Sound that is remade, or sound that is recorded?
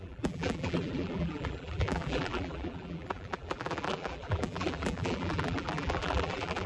remade